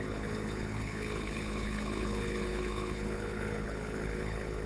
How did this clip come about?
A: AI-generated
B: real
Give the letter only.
A